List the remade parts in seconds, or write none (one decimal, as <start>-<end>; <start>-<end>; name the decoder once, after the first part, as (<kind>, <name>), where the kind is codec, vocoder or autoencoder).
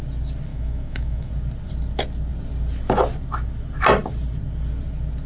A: 0.5-1.3 (autoencoder, DAC-VAE)